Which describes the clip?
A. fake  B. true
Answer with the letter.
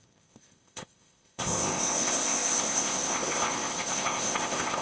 A